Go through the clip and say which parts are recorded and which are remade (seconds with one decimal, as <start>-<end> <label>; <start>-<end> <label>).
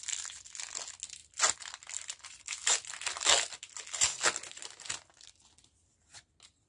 0.0-6.7 recorded